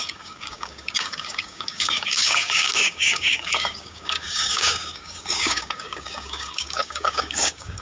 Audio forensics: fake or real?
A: fake